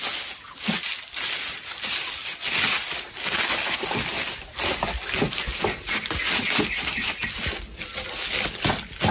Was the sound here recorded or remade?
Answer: recorded